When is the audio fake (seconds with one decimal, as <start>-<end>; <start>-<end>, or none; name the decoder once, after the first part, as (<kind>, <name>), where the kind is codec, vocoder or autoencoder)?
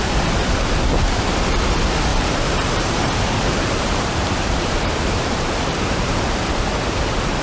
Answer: 2.1-6.5 (vocoder, BigVGAN v2)